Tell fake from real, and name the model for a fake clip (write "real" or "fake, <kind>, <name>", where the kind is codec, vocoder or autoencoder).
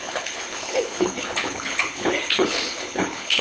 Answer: fake, codec, HILCodec